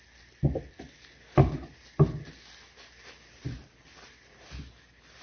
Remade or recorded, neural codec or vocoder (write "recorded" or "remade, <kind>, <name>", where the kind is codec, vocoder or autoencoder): recorded